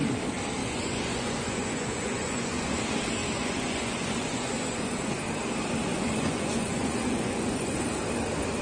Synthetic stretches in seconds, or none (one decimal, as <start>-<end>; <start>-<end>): 0.6-2.8; 3.2-5.2; 5.8-7.8